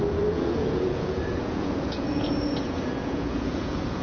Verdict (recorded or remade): remade